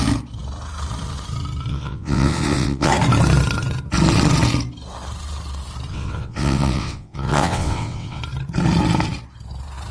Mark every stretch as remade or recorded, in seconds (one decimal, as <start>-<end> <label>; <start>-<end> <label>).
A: 0.0-1.7 recorded; 1.7-2.9 remade; 2.9-5.9 recorded; 5.9-8.2 remade; 8.2-9.9 recorded